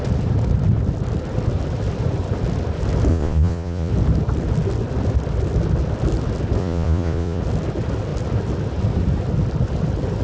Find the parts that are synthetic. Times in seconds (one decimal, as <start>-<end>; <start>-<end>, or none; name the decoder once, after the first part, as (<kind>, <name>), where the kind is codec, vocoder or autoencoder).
3.1-3.9 (vocoder, Vocos); 6.6-7.4